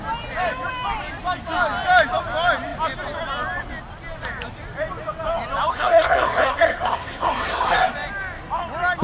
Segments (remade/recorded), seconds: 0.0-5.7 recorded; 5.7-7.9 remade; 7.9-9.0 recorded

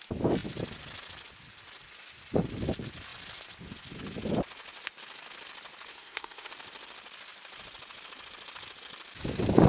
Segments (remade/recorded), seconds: 0.0-5.9 recorded; 5.9-6.5 remade; 6.5-9.7 recorded

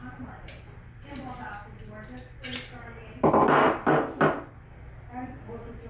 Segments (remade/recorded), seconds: 0.0-5.9 recorded